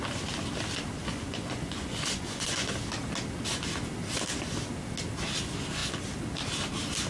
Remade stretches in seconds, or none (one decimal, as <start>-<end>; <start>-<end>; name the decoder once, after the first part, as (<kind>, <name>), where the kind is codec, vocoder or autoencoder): 1.1-2.7 (vocoder, Vocos)